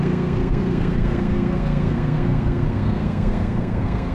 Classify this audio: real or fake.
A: fake